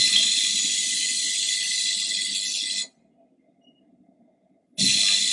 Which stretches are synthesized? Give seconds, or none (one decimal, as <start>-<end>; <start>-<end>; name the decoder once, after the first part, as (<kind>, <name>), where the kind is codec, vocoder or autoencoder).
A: none